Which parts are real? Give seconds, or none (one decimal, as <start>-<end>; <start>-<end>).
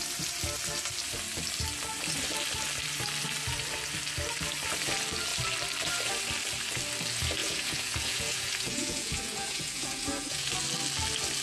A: 0.0-7.4; 10.5-11.4